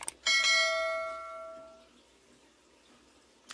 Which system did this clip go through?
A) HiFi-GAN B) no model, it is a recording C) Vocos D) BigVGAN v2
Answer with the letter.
B